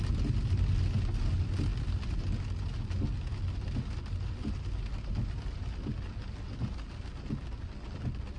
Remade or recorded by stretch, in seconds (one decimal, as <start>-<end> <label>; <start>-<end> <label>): 0.0-8.4 recorded